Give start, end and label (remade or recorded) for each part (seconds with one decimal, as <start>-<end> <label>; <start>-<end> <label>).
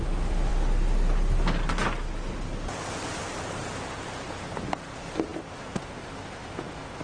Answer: 0.0-7.0 recorded